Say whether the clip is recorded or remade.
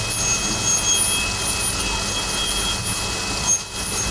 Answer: recorded